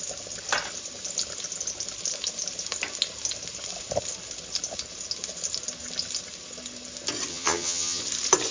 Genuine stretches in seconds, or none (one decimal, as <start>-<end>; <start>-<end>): 0.0-7.3; 8.0-8.5